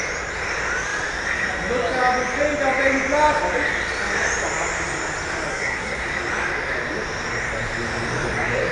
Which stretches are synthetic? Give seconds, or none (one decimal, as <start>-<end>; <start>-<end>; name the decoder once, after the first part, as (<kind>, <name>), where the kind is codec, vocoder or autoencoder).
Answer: 5.5-6.1 (codec, SNAC)